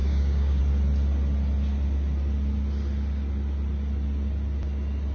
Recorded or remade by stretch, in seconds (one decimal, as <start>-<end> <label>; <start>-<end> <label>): 0.0-0.6 remade; 0.6-5.1 recorded